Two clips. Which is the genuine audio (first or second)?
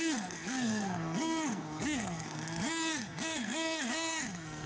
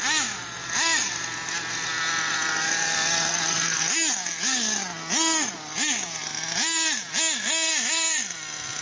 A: second